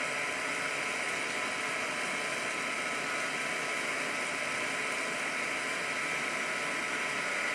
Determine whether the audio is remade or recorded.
recorded